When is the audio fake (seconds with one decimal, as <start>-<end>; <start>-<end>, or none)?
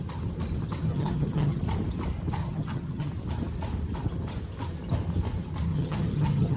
0.9-1.6; 2.4-3.1; 5.7-6.6